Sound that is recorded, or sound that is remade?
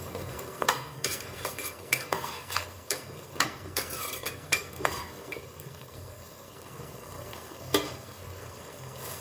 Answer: remade